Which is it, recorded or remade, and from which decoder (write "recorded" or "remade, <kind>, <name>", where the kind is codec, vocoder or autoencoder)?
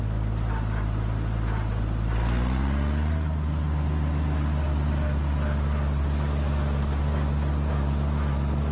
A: recorded